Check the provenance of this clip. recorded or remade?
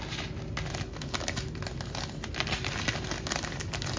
recorded